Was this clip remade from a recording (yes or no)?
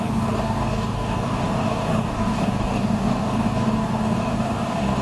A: yes